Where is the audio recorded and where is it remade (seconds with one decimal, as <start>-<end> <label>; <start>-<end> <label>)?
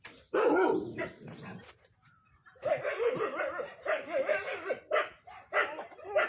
0.0-1.6 recorded; 1.6-3.4 remade; 3.4-6.3 recorded